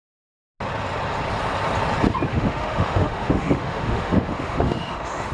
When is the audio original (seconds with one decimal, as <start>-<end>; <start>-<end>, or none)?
0.0-2.3